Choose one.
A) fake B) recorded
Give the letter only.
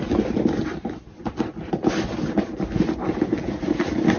B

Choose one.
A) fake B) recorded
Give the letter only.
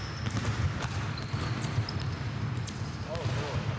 B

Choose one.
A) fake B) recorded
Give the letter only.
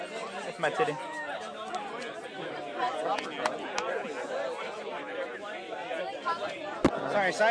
B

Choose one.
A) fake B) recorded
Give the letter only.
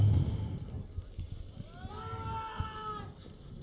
B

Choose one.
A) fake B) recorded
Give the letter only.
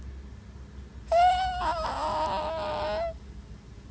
B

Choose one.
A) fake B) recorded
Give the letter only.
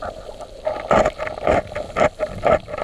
B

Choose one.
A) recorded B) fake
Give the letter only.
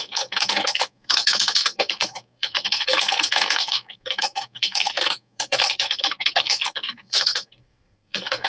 B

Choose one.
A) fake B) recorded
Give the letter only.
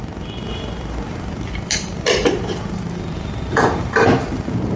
A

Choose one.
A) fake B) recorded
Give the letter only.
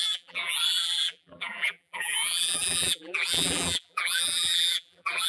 A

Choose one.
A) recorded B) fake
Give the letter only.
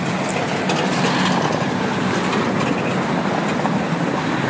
A